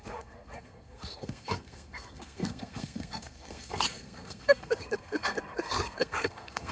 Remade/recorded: remade